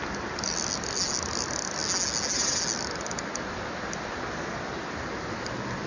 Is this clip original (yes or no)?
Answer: yes